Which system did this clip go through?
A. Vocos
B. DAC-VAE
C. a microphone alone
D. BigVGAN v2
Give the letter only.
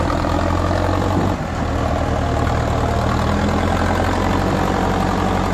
C